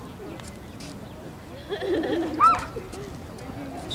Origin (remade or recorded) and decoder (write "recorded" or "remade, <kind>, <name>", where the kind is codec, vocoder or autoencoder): recorded